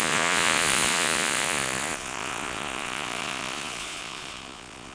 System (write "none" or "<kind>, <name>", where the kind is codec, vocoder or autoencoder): vocoder, Vocos